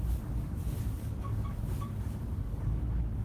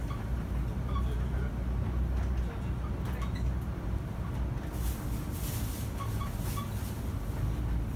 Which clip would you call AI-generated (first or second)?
first